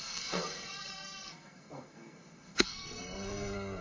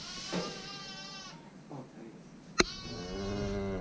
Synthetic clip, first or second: first